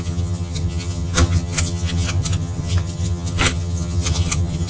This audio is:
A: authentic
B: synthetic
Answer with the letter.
B